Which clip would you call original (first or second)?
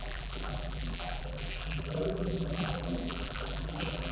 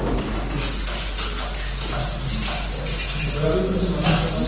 second